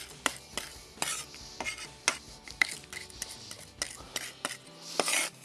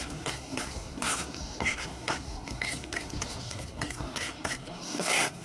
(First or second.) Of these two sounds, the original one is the first